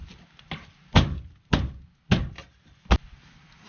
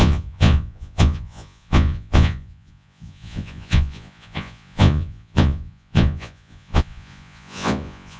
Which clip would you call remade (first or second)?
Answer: second